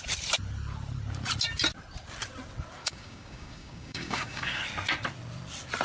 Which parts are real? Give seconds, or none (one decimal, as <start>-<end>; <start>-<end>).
0.0-2.8; 4.6-5.8